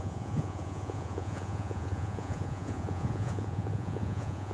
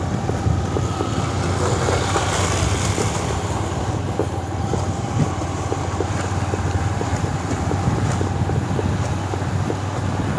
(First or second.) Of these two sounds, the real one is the second